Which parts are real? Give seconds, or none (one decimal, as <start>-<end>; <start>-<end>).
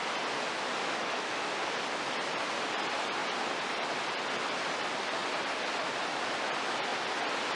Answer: 0.0-0.8; 1.5-7.6